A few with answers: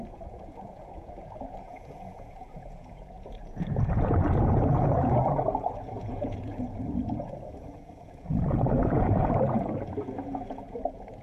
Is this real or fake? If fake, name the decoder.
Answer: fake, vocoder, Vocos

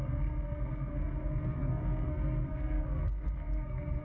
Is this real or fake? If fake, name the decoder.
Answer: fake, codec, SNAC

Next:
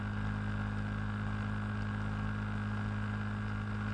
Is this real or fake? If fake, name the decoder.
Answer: real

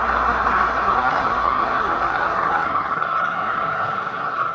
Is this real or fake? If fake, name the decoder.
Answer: fake, codec, SNAC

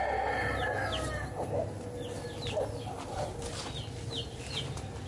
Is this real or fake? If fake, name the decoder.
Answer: real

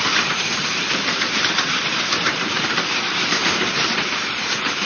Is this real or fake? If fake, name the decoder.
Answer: fake, vocoder, BigVGAN v2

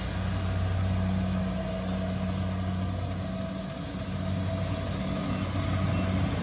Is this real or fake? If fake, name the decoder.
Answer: real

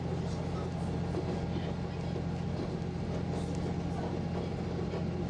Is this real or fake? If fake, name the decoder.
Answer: real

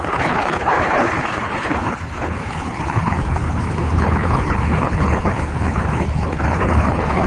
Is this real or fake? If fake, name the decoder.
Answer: fake, codec, HILCodec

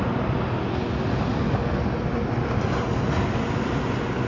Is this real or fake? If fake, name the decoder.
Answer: real